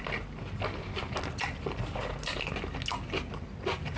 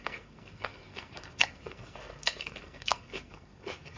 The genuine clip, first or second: first